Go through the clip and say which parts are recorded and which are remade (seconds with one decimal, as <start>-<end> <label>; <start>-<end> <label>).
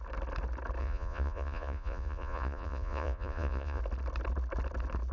0.0-0.8 recorded; 0.8-3.8 remade; 3.8-5.1 recorded